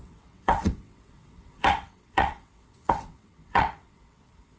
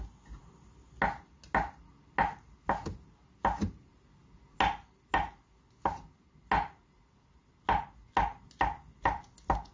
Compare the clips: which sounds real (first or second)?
second